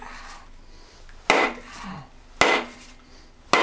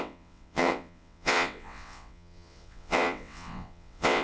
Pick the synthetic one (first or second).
second